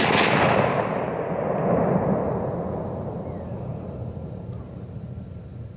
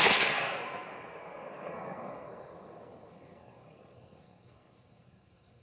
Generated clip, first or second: second